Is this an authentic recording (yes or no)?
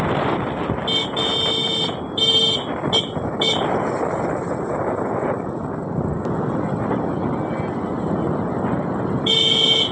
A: yes